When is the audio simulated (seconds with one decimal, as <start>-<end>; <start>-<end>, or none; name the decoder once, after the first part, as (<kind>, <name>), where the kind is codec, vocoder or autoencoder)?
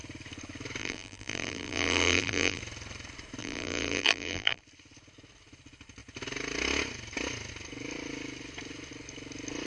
0.8-2.6 (vocoder, BigVGAN v2); 3.4-4.6